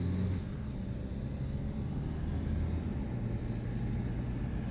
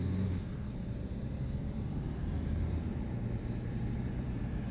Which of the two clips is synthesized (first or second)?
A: second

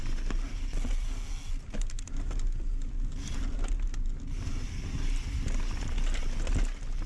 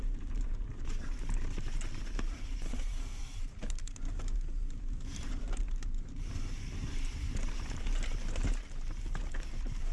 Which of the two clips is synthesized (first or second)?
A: second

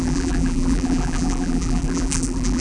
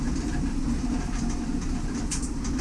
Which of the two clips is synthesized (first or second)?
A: first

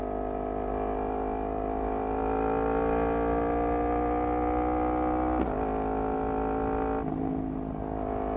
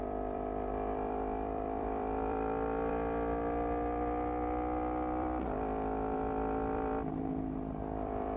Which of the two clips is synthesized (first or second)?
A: second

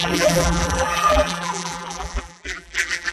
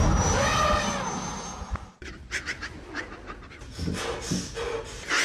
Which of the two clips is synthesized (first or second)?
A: first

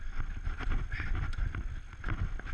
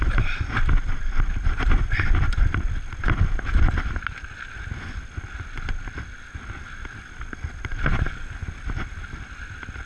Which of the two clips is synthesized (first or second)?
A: second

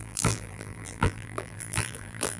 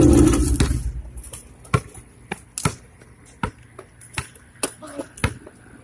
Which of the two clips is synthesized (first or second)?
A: first